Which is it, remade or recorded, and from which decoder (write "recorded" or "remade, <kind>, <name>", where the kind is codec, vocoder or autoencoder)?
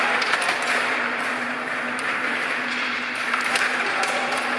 remade, vocoder, BigVGAN v2